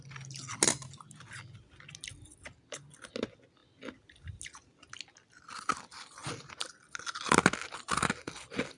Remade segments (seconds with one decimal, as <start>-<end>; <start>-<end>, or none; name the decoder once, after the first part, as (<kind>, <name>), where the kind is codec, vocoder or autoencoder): none